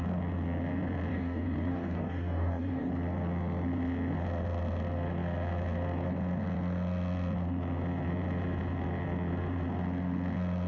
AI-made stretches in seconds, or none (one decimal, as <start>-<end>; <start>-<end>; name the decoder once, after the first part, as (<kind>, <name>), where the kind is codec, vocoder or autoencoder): 1.1-2.9 (codec, DAC)